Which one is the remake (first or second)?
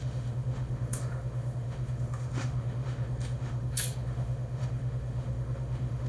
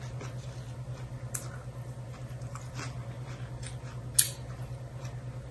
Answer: first